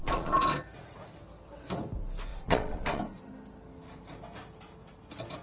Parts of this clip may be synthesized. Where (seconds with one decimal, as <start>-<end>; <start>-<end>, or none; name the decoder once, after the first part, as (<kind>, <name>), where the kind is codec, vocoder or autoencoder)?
0.0-0.5 (vocoder, Vocos); 2.3-3.0